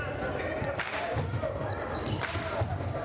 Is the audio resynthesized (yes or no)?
no